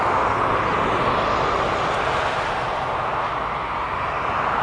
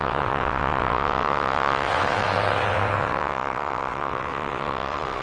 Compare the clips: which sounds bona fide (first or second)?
first